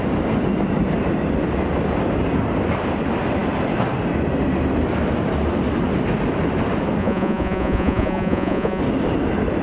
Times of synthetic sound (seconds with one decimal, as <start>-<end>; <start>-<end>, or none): 7.0-8.8